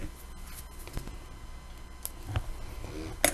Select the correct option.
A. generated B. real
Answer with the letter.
B